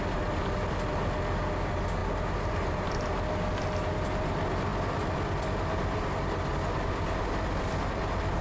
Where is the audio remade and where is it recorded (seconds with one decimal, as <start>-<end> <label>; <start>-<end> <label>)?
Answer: 0.0-8.4 recorded